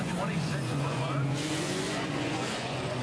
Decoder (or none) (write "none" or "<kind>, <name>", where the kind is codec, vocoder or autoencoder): vocoder, Vocos